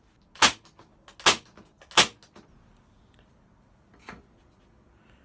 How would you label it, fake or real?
real